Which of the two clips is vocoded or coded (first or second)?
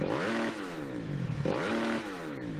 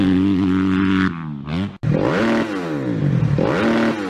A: first